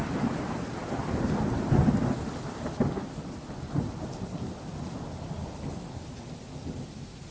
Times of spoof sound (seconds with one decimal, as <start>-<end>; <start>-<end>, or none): none